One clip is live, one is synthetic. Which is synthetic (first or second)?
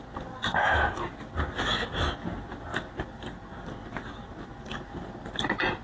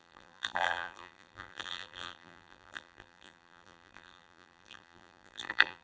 second